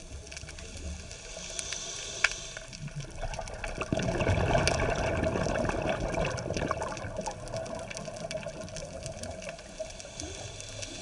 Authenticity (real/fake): real